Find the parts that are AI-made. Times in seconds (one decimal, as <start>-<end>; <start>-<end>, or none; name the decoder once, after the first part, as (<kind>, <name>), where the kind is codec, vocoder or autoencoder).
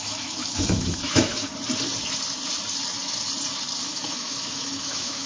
0.0-1.5 (autoencoder, DAC-VAE); 3.8-5.3